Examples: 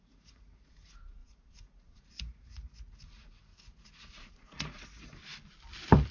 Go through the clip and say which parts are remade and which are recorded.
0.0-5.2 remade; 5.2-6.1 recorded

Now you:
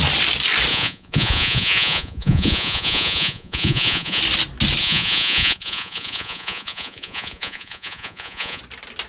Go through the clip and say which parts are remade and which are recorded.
0.0-0.7 recorded; 0.7-4.2 remade; 4.2-4.8 recorded; 4.8-8.6 remade; 8.6-9.1 recorded

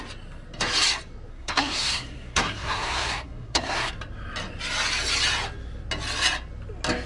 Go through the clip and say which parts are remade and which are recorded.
0.0-1.3 recorded; 1.3-3.9 remade; 3.9-7.1 recorded

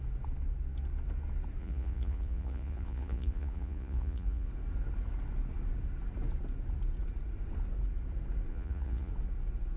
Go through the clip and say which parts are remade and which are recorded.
0.0-1.6 recorded; 1.6-4.5 remade; 4.5-8.5 recorded; 8.5-9.1 remade; 9.1-9.8 recorded

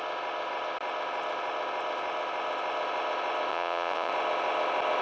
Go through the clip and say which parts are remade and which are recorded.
0.0-3.5 recorded; 3.5-4.1 remade; 4.1-5.0 recorded

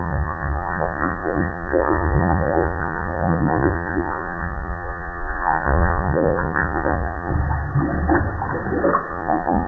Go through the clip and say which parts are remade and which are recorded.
0.0-7.3 remade; 7.3-9.1 recorded; 9.1-9.7 remade

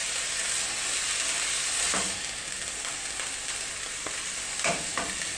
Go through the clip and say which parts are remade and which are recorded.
0.0-2.8 recorded; 2.8-5.4 remade